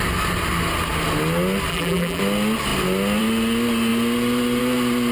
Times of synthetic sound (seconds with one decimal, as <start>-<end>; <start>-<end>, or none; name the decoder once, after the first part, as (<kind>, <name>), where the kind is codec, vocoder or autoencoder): 1.7-2.2 (vocoder, BigVGAN v2)